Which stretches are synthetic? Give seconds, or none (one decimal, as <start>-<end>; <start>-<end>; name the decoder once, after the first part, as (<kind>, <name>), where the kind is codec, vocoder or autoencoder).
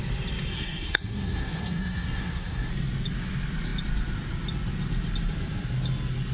0.5-2.7 (codec, SNAC)